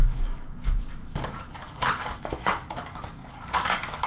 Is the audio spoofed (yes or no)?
yes